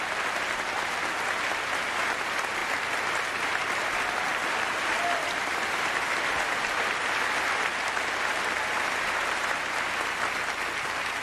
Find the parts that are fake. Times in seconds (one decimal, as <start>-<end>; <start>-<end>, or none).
4.3-8.7